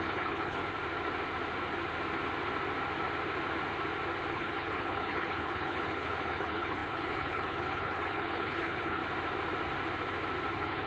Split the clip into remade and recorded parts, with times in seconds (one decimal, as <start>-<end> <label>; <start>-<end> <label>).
0.0-0.6 remade; 0.6-4.3 recorded; 4.3-9.0 remade; 9.0-10.5 recorded; 10.5-10.9 remade